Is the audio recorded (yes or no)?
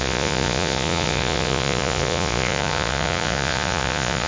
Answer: no